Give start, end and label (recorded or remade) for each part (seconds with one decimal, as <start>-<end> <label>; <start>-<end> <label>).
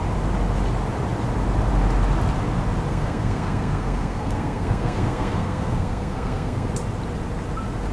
0.0-2.9 recorded; 2.9-6.7 remade; 6.7-7.9 recorded